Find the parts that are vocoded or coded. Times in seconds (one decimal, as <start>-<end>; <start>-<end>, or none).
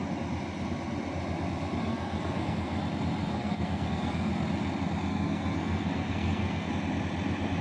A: 1.9-2.8; 3.2-4.3; 5.1-6.7